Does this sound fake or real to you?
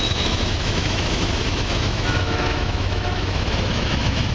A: fake